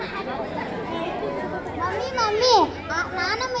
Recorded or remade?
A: recorded